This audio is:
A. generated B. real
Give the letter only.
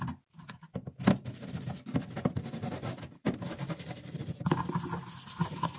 B